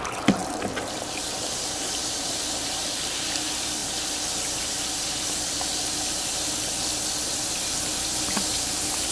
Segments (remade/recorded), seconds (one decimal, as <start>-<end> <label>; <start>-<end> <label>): 0.0-9.1 recorded